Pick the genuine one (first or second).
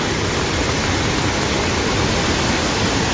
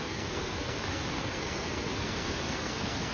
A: first